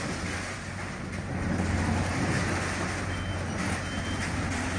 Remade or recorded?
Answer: recorded